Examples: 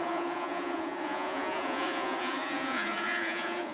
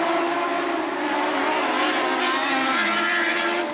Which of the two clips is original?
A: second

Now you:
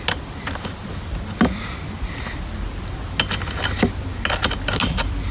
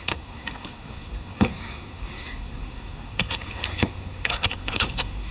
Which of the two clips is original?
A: first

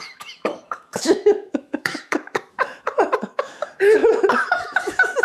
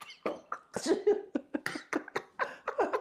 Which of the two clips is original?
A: second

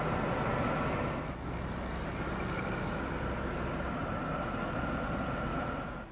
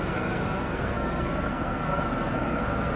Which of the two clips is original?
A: first